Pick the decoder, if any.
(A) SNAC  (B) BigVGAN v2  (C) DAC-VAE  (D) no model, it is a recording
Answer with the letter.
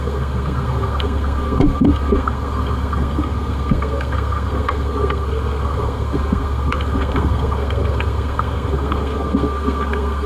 A